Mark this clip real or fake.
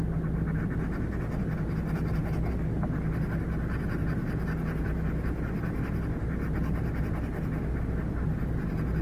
real